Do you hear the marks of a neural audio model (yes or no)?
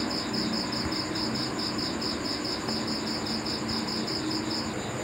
no